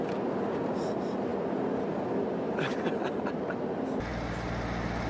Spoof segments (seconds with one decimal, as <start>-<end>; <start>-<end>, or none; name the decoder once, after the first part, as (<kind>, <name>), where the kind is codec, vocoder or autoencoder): none